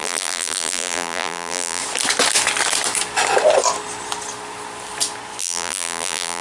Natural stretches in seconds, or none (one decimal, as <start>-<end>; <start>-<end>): 1.8-5.4